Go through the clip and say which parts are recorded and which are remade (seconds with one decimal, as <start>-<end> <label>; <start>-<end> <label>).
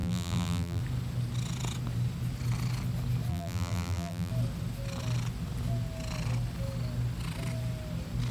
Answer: 0.0-0.8 remade; 0.8-3.3 recorded; 3.3-4.3 remade; 4.3-8.3 recorded